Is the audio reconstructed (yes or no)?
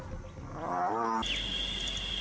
no